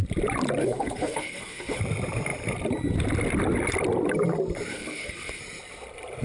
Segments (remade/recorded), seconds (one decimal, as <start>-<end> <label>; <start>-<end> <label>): 0.0-0.6 recorded; 0.6-1.8 remade; 1.8-4.7 recorded; 4.7-5.4 remade; 5.4-6.2 recorded